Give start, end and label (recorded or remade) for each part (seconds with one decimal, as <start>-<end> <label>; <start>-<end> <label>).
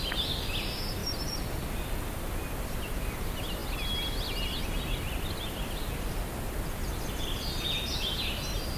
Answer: 0.0-8.8 recorded